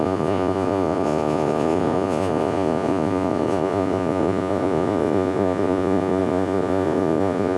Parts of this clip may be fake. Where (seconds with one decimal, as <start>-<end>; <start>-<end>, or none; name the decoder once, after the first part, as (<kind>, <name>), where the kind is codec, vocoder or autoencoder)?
0.0-7.6 (vocoder, Vocos)

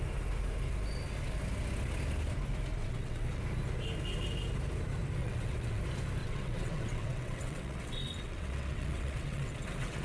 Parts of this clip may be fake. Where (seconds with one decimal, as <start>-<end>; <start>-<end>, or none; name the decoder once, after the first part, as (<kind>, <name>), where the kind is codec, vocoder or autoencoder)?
2.8-3.4 (vocoder, WaveNeXt); 5.2-5.8; 6.2-10.0

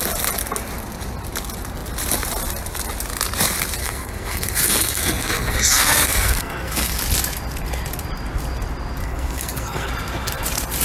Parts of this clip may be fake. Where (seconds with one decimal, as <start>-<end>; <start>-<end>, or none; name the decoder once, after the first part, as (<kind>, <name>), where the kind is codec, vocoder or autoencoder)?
3.8-7.0 (codec, SNAC); 9.0-9.9